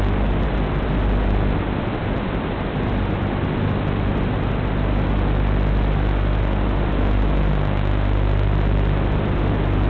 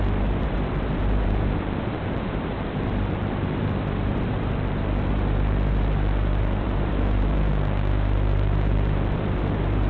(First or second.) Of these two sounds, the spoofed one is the second